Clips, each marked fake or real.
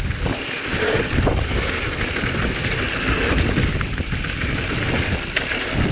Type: real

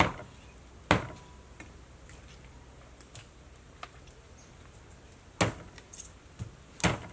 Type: real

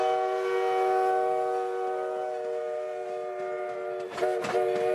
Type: real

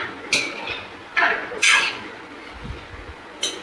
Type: fake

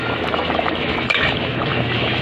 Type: fake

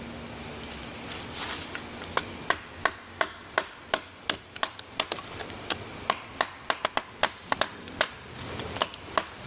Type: real